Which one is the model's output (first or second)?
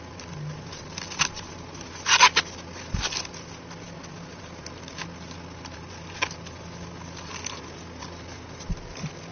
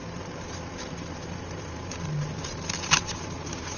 second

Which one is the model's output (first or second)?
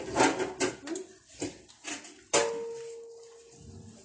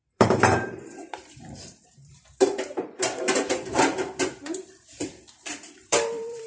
second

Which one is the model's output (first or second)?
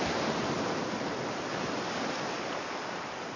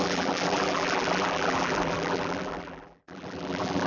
second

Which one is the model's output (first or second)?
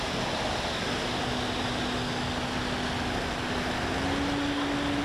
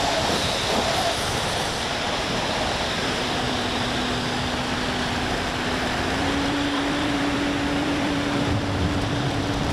second